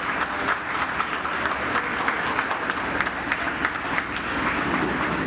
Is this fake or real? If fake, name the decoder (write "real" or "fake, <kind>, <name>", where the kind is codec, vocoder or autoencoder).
real